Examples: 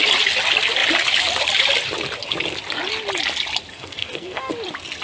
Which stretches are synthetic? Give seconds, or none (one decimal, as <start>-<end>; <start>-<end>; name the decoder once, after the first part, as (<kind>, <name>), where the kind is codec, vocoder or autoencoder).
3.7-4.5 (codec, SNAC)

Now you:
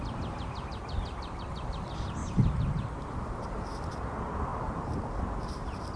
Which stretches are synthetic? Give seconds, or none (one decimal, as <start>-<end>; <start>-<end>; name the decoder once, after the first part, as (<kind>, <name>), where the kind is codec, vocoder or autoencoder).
2.2-3.9 (vocoder, BigVGAN v2); 4.5-5.2

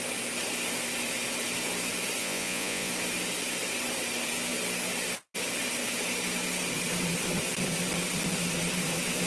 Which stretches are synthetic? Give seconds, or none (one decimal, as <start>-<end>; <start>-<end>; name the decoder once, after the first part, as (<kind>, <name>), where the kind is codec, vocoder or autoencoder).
2.2-2.9 (vocoder, Vocos)